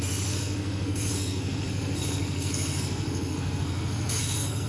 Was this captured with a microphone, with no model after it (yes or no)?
no